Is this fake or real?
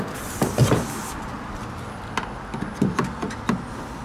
real